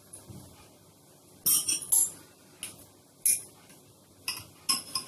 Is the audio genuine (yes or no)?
yes